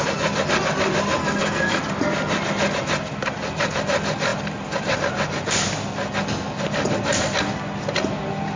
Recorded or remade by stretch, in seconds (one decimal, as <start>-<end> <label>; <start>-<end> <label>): 0.0-1.2 recorded; 1.2-1.8 remade; 1.8-8.6 recorded